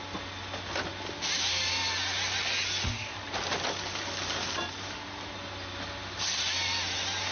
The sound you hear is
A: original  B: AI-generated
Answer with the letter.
A